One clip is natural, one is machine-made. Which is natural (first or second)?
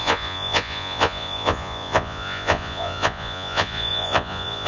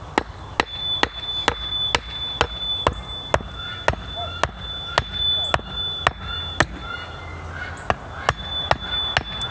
second